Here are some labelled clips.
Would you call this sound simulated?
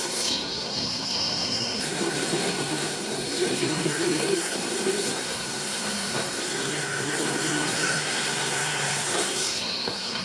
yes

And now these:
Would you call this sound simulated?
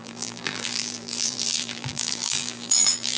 yes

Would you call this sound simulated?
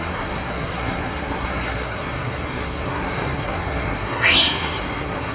yes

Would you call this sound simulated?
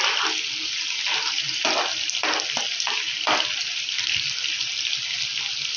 no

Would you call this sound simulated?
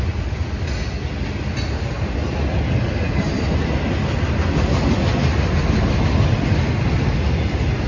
no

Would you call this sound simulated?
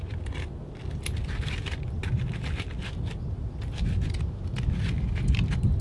no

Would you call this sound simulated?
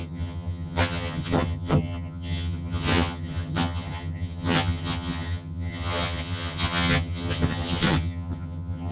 yes